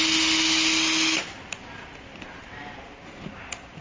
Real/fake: real